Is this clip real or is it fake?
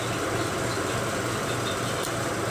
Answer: real